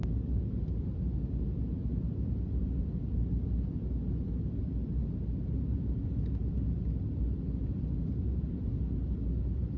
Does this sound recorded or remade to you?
recorded